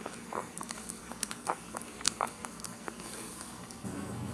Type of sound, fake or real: fake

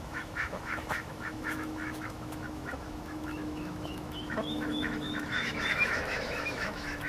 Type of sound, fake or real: fake